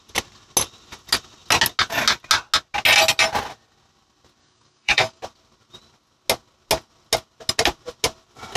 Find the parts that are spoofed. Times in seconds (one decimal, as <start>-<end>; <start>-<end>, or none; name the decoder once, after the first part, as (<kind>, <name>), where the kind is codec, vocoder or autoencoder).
4.4-5.2 (codec, DAC)